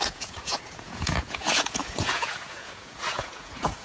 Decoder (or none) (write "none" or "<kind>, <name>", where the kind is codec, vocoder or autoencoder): vocoder, Vocos